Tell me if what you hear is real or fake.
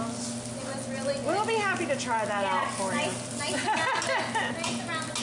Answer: real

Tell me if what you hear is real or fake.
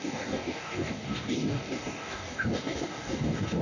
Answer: fake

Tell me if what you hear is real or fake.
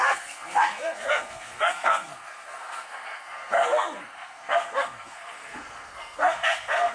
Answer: fake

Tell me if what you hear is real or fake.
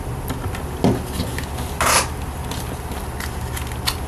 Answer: real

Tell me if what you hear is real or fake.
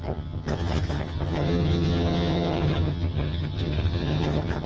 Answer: fake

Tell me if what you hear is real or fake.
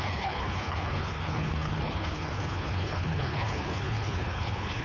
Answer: fake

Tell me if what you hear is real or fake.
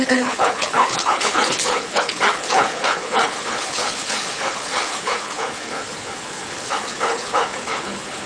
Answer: fake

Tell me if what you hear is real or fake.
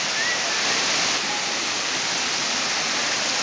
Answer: real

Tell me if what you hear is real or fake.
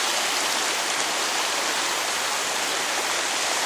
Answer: real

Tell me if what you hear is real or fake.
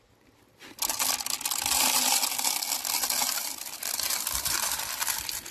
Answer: real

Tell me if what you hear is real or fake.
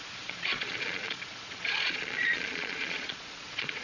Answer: fake